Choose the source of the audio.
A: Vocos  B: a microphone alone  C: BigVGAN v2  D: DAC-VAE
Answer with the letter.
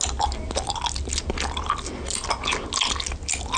B